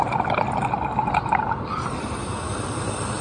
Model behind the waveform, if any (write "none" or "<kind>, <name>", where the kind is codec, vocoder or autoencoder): none